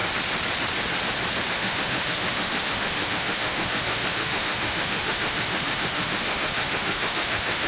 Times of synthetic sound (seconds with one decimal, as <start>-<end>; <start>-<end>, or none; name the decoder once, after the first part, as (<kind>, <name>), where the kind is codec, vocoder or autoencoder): 1.5-7.7 (autoencoder, DAC-VAE)